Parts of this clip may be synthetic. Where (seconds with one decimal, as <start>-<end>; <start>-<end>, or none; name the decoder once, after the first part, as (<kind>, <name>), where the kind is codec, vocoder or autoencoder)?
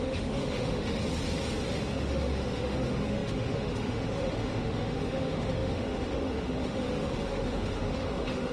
0.0-1.0 (autoencoder, DAC-VAE); 1.7-8.5